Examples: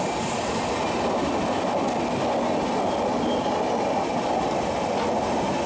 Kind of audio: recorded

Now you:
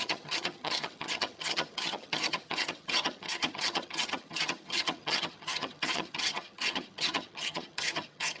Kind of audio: remade